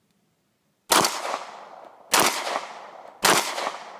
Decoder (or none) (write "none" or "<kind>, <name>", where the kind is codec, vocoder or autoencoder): none